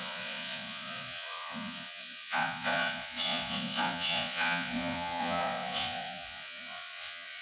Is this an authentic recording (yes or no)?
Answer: no